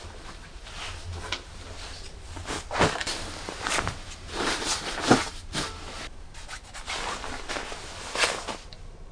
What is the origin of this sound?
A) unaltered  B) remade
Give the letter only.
A